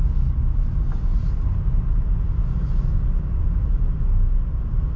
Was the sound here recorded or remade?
recorded